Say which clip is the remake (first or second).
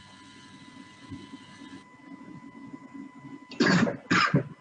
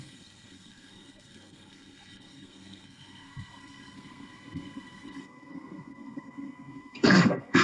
second